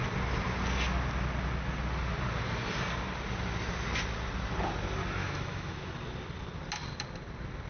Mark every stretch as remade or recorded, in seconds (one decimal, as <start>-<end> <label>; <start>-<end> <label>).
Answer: 0.0-5.2 recorded; 5.2-5.9 remade; 5.9-7.7 recorded